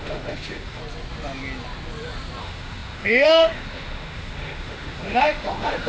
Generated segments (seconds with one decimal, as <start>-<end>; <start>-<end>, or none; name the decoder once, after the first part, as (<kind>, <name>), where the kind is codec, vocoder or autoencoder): 0.0-0.8 (autoencoder, DAC-VAE); 2.4-5.9